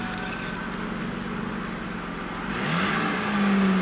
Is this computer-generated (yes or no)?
no